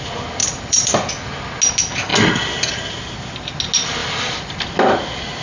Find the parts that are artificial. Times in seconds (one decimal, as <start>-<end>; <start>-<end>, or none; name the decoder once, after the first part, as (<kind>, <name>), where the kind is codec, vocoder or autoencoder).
0.4-1.1 (vocoder, BigVGAN v2); 4.0-4.6